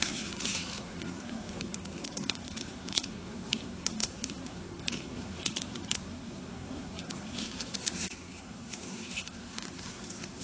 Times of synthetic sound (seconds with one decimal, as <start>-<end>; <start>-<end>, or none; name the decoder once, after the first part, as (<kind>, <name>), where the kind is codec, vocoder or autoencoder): 0.0-10.4 (codec, SNAC)